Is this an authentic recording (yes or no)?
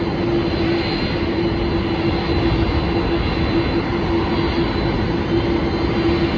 yes